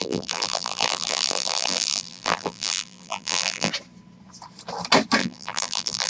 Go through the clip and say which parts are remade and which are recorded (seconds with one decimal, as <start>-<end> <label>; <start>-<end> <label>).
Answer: 0.0-3.7 remade; 3.7-5.2 recorded; 5.2-6.1 remade

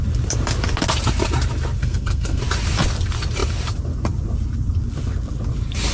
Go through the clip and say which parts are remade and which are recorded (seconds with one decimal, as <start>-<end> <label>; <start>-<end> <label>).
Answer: 0.0-1.8 recorded; 1.8-2.4 remade; 2.4-5.9 recorded

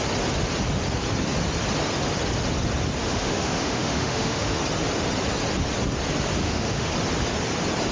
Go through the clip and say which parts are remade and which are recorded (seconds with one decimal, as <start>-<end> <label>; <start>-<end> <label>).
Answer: 0.0-3.0 recorded; 3.0-4.6 remade; 4.6-6.4 recorded; 6.4-6.9 remade; 6.9-7.9 recorded

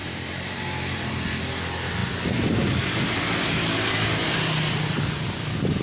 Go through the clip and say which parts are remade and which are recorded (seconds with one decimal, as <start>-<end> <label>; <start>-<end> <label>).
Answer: 0.0-1.1 remade; 1.1-5.8 recorded

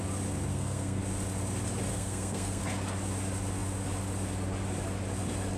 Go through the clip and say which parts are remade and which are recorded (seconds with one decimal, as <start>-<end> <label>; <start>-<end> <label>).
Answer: 0.0-0.5 recorded; 0.5-1.0 remade; 1.0-1.9 recorded; 1.9-2.6 remade; 2.6-5.6 recorded

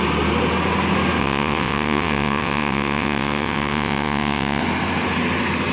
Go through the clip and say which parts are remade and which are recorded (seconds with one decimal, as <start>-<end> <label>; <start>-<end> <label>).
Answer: 0.0-1.2 recorded; 1.2-4.6 remade; 4.6-5.7 recorded